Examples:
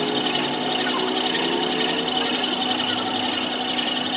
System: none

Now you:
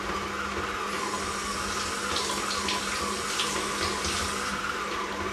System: none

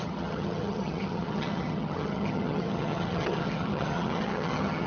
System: vocoder, HiFi-GAN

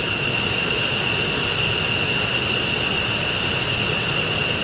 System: none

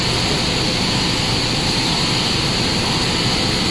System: none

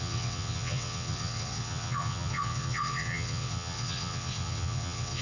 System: vocoder, WaveNeXt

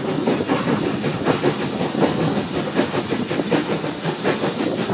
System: none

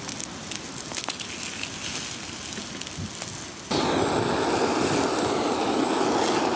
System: none